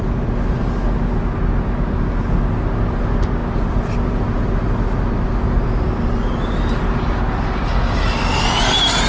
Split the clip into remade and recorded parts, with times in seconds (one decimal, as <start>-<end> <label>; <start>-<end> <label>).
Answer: 0.0-9.1 recorded

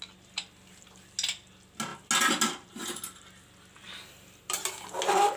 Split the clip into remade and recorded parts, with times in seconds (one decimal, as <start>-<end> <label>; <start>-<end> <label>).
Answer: 0.0-5.4 recorded

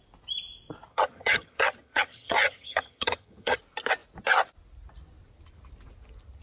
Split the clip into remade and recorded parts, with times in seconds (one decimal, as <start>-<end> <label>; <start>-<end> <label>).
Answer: 0.0-0.9 recorded; 0.9-3.6 remade; 3.6-6.4 recorded

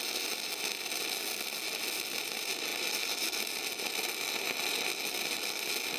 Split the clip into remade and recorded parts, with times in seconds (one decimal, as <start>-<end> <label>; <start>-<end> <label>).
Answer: 0.0-6.0 recorded

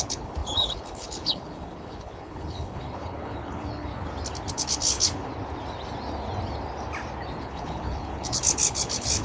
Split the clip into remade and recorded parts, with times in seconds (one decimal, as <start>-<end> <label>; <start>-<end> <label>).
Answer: 0.0-3.9 remade; 3.9-4.5 recorded; 4.5-5.3 remade; 5.3-7.4 recorded; 7.4-9.2 remade

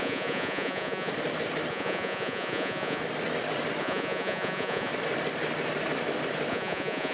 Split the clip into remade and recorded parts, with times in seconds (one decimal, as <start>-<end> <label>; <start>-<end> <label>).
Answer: 0.0-1.1 remade; 1.1-1.7 recorded; 1.7-3.0 remade; 3.0-3.8 recorded; 3.8-4.9 remade; 4.9-6.5 recorded; 6.5-7.1 remade

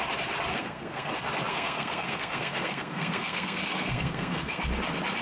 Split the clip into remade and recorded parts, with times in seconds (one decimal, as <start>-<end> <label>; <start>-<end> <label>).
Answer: 0.0-0.5 recorded; 0.5-1.1 remade; 1.1-1.5 recorded; 1.5-4.6 remade; 4.6-5.2 recorded